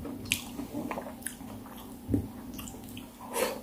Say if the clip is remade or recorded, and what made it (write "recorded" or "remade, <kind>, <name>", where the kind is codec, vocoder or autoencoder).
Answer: recorded